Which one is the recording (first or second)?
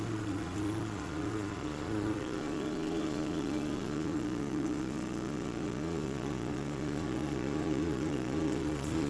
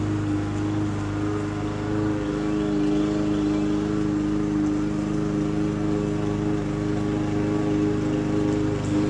second